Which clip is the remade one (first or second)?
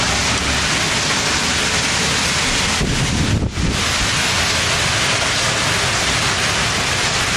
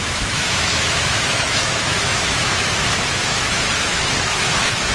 second